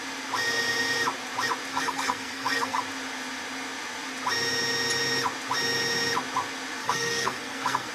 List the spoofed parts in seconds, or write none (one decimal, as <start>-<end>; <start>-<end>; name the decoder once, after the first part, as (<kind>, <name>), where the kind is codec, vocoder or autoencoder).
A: 1.7-2.8 (codec, SNAC); 6.8-7.9